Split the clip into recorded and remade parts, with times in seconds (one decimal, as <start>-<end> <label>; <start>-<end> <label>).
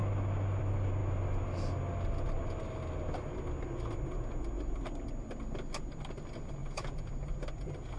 0.0-6.6 recorded; 6.6-7.1 remade; 7.1-8.0 recorded